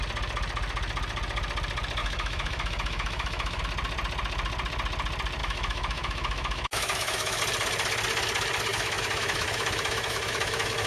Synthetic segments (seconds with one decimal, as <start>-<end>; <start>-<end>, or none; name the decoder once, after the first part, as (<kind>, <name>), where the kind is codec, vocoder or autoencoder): 2.0-3.6 (autoencoder, DAC-VAE); 5.4-7.4; 8.7-10.9